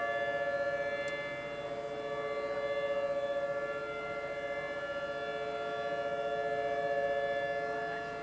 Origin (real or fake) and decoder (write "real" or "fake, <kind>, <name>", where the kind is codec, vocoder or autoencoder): real